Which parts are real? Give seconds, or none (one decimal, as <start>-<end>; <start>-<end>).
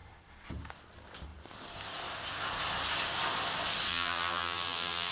0.0-3.9